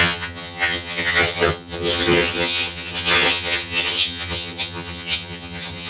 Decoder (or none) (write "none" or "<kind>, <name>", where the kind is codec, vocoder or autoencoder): vocoder, HiFi-GAN